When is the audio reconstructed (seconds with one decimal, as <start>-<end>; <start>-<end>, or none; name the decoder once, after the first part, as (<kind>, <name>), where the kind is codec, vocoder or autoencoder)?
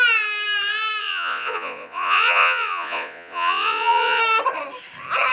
1.0-4.2 (vocoder, Vocos)